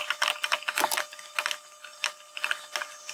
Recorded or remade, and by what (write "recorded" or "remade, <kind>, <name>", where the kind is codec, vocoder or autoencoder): recorded